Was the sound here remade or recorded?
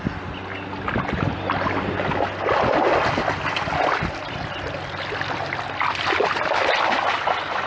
recorded